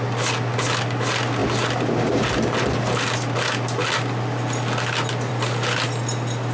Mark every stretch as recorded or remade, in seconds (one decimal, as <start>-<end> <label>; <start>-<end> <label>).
0.0-6.5 recorded